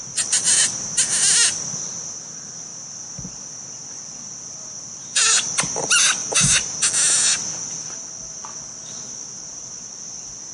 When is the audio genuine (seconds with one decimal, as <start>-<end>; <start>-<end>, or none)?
0.0-10.5